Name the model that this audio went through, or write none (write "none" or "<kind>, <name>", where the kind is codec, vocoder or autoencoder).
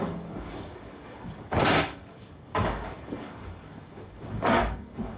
codec, DAC